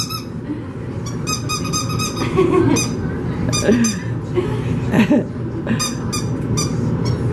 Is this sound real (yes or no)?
yes